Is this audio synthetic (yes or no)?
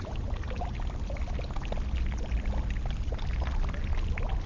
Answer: no